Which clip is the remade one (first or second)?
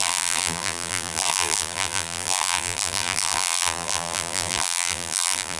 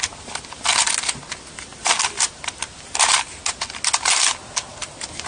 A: first